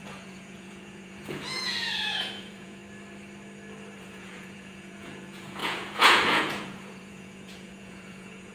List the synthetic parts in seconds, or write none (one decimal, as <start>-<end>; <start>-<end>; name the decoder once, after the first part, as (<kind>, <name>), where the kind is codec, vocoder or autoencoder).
0.0-2.8 (vocoder, Vocos); 4.0-8.5